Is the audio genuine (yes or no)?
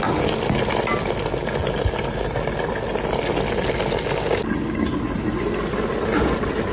yes